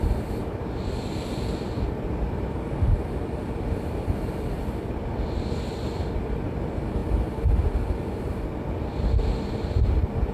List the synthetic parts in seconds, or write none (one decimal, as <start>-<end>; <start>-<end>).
none